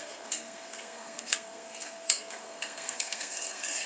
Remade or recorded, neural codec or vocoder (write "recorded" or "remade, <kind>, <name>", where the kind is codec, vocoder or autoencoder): remade, codec, SNAC